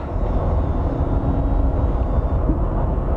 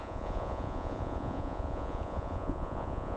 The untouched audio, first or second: first